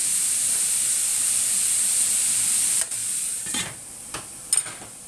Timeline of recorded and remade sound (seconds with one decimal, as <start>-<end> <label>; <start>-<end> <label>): 0.0-1.1 recorded; 1.1-4.2 remade; 4.2-5.1 recorded